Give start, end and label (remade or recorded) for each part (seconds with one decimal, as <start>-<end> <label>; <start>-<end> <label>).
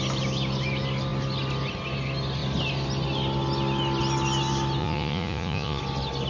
0.0-4.8 recorded; 4.8-5.8 remade; 5.8-6.3 recorded